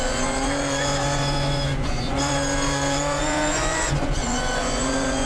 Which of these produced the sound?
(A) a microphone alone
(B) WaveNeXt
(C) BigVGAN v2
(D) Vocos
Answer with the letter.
D